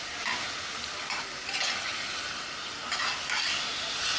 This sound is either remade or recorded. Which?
recorded